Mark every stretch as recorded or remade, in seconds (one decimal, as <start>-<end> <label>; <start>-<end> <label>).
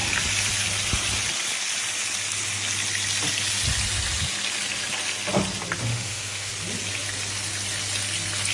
0.0-5.9 recorded; 5.9-6.5 remade; 6.5-8.5 recorded